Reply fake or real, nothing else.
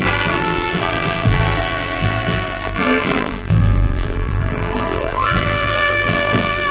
fake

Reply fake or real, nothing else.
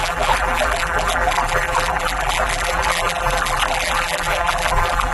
fake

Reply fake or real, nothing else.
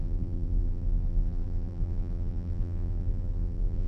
fake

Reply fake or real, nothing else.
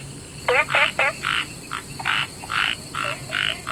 real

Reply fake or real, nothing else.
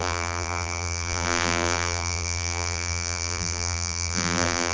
fake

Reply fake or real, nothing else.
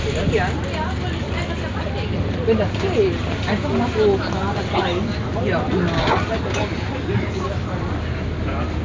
real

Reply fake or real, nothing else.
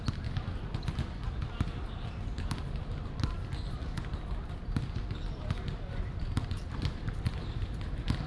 fake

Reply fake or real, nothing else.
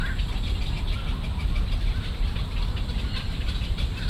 fake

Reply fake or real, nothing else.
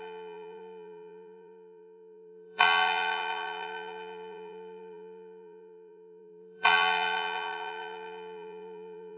fake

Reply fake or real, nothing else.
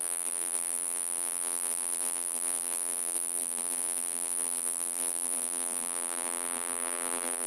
fake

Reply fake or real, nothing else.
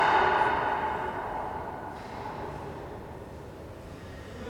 real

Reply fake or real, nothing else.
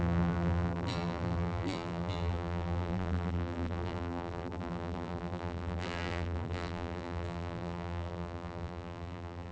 fake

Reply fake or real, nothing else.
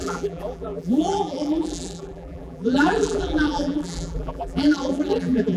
fake